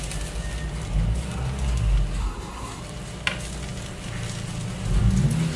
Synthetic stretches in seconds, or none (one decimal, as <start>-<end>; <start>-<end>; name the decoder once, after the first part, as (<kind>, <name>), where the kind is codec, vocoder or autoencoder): 2.2-2.8 (codec, SNAC)